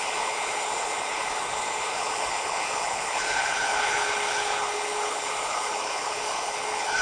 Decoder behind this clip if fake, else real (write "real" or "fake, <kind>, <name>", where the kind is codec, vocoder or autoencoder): fake, codec, HILCodec